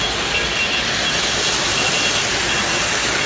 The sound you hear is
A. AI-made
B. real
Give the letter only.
B